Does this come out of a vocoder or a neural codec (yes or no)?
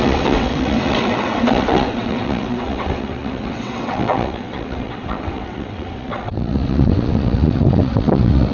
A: yes